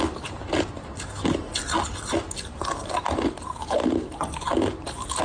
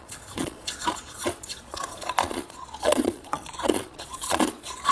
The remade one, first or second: second